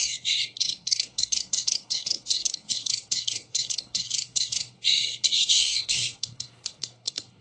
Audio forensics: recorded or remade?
remade